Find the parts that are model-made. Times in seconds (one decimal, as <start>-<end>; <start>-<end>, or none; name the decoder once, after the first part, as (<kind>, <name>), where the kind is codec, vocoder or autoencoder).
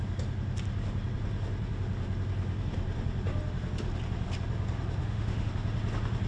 5.0-5.5 (autoencoder, DAC-VAE)